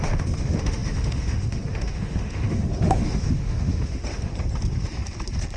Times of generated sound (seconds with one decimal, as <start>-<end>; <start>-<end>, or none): 0.0-4.3